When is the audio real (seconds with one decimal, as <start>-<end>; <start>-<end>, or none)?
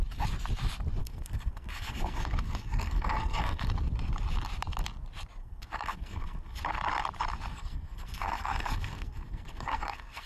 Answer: 0.0-1.0; 3.6-5.4; 6.6-7.5